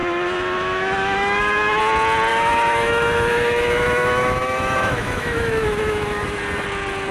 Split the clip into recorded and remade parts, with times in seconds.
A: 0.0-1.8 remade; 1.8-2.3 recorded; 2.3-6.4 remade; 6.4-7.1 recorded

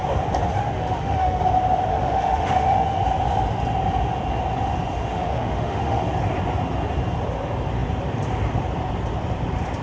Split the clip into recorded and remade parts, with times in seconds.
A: 0.0-0.6 recorded; 0.6-1.4 remade; 1.4-1.9 recorded; 1.9-3.0 remade; 3.0-5.1 recorded; 5.1-6.0 remade; 6.0-9.8 recorded